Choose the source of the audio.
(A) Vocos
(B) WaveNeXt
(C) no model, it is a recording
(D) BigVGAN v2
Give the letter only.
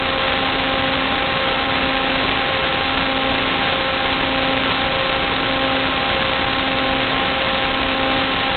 C